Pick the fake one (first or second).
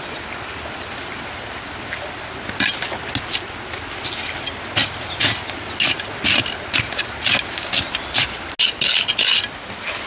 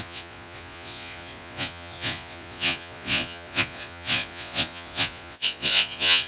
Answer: second